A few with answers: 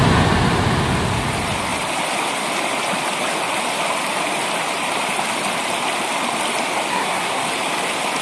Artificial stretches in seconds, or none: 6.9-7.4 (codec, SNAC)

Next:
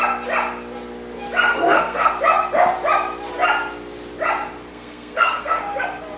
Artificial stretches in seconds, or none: 1.5-2.1 (codec, SNAC); 4.7-5.6